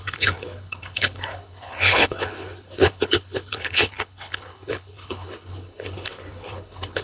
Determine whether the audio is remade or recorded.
remade